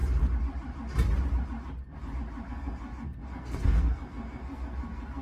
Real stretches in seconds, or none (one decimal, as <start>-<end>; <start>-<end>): 0.0-2.5